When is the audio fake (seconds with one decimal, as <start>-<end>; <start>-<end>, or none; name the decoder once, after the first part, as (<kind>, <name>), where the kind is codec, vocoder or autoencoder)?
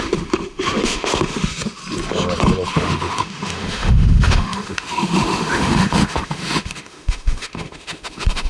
0.0-1.8 (autoencoder, DAC-VAE); 2.7-8.5